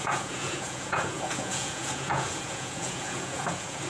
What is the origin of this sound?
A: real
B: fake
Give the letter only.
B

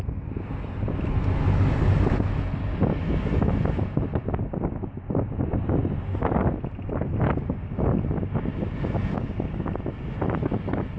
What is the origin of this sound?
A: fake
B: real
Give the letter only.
B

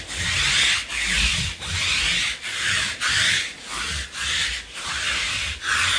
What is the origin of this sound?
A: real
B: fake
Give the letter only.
A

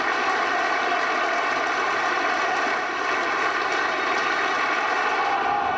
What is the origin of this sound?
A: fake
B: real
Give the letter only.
B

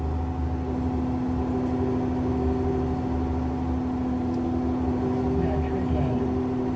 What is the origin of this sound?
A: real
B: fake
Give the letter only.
A